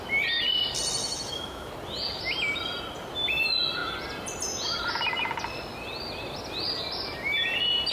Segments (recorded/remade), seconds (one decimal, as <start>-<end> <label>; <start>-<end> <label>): 0.0-1.0 recorded; 1.0-1.7 remade; 1.7-7.9 recorded